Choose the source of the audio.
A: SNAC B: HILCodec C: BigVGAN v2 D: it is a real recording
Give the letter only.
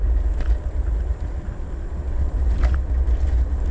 D